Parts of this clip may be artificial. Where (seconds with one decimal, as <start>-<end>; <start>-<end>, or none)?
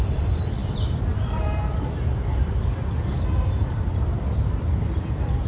0.0-5.5